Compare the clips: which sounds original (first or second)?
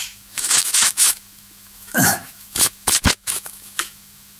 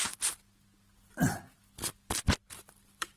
second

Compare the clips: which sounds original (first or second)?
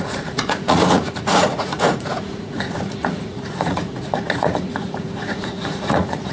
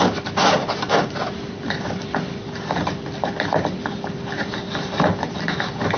second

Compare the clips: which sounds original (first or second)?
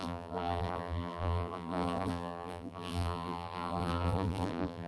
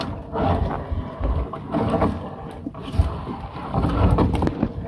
second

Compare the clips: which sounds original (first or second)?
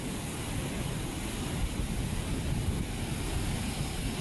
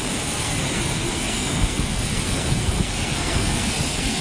first